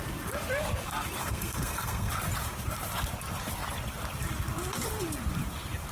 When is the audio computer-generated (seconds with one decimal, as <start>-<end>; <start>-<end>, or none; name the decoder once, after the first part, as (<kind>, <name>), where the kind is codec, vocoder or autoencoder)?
1.2-2.1 (codec, SNAC)